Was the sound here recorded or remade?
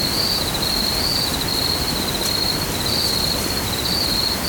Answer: remade